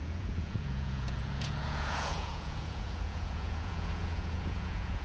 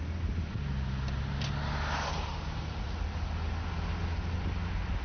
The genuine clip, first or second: second